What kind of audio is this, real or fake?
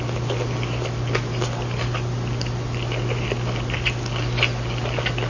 real